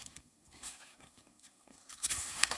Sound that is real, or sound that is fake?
fake